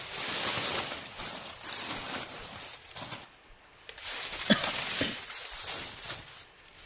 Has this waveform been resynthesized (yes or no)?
no